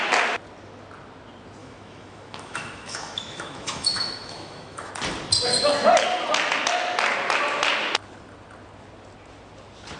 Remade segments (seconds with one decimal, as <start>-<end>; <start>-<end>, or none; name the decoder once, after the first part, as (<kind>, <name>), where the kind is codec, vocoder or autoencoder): 1.6-4.9 (autoencoder, DAC-VAE)